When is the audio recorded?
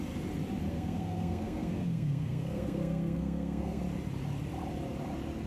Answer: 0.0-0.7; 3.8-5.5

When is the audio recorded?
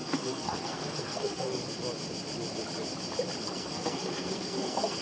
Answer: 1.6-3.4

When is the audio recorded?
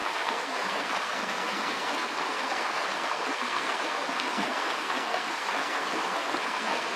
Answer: none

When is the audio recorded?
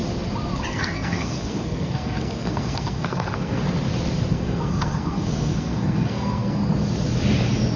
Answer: 0.0-0.7; 3.6-4.3; 6.6-7.8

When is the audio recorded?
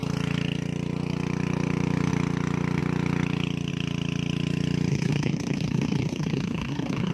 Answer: 0.0-4.9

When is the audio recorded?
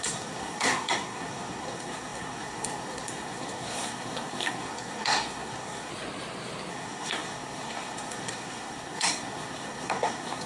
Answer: 5.9-6.7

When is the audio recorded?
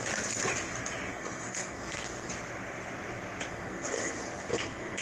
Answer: 0.0-1.1; 2.3-3.5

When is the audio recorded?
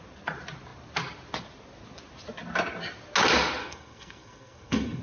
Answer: 0.0-3.6